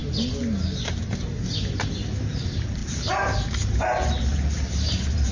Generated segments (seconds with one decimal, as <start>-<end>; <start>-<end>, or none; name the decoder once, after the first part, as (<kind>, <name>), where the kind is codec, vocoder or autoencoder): none